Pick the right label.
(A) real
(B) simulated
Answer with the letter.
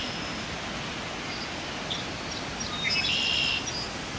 A